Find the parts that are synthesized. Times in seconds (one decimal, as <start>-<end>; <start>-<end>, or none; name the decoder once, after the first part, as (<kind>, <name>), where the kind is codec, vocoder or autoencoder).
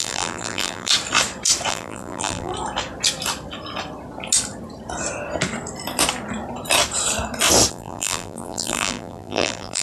0.0-0.9 (vocoder, BigVGAN v2); 1.7-2.5; 7.7-9.8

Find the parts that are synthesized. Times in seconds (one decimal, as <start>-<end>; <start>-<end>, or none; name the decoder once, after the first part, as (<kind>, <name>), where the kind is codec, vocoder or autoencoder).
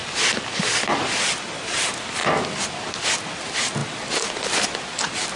none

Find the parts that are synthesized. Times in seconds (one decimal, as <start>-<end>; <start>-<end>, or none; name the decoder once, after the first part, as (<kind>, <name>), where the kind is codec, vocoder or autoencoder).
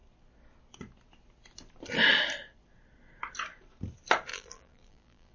4.3-5.3 (vocoder, BigVGAN v2)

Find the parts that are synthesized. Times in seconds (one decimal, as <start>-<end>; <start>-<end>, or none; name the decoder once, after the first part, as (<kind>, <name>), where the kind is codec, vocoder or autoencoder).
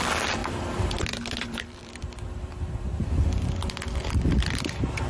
0.4-3.3 (vocoder, BigVGAN v2)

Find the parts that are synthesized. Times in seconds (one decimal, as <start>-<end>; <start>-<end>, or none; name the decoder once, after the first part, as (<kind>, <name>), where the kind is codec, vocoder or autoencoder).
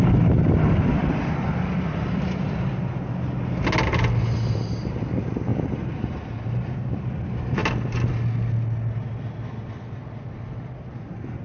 1.0-2.7 (vocoder, BigVGAN v2); 5.5-6.5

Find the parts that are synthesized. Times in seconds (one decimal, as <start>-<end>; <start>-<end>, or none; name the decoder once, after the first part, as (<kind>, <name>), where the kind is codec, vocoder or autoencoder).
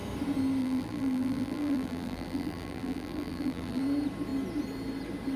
0.6-3.8 (vocoder, BigVGAN v2)